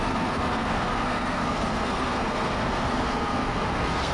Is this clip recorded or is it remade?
remade